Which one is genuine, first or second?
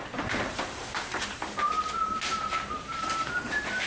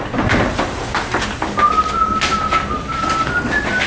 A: second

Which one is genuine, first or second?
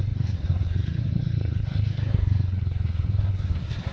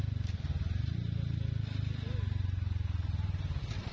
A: second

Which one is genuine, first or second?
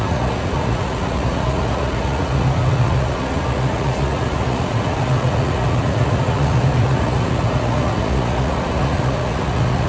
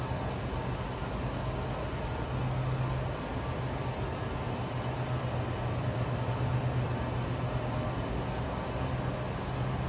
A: second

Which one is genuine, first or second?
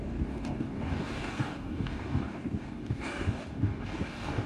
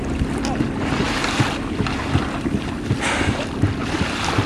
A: second